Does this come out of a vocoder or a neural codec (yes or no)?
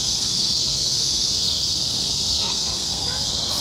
yes